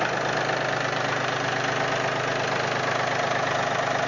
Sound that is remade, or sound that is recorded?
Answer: recorded